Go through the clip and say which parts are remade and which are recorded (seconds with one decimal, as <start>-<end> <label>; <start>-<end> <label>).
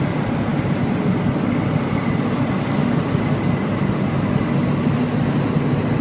0.0-6.0 recorded